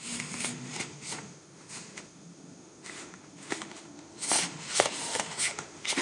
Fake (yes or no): yes